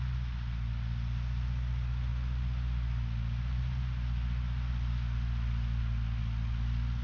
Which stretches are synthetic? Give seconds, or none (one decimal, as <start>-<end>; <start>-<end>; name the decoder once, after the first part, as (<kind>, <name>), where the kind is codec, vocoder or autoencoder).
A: none

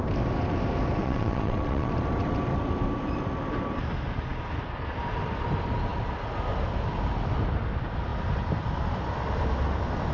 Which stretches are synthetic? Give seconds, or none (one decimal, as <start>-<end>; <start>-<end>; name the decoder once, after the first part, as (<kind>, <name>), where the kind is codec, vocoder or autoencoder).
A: 1.0-1.9 (vocoder, WaveNeXt)

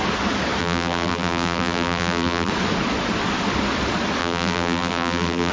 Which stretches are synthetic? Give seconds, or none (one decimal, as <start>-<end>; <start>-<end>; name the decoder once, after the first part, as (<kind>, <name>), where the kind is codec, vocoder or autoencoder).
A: 0.6-2.5 (vocoder, BigVGAN v2); 4.2-5.5

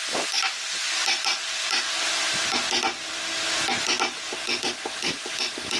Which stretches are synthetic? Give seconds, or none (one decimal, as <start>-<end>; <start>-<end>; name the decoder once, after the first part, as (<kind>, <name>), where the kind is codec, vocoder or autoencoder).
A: none